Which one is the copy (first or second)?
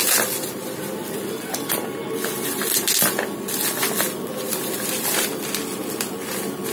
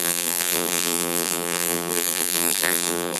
second